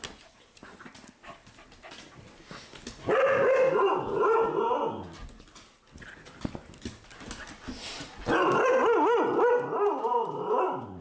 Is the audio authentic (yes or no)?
yes